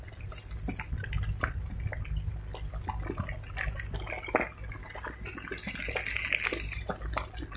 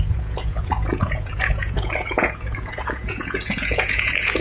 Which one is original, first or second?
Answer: first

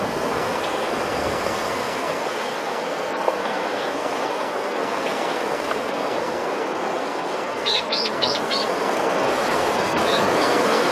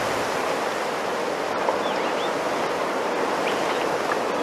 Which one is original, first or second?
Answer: second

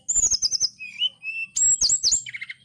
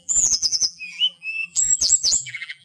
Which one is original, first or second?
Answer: first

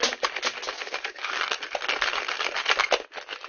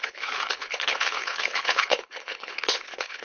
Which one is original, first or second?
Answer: first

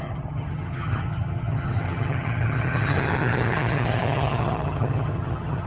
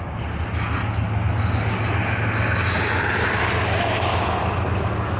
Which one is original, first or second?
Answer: second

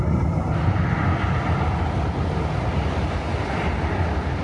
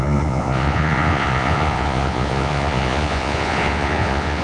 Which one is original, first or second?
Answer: first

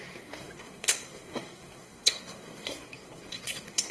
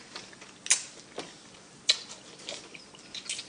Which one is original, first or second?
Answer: second